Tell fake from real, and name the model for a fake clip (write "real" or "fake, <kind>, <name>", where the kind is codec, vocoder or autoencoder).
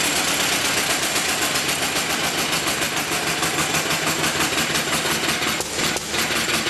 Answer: real